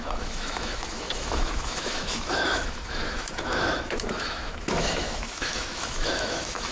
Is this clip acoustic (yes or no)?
no